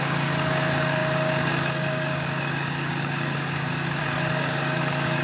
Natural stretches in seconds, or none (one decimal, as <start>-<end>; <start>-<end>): none